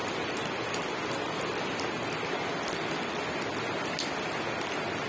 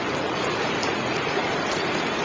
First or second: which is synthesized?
second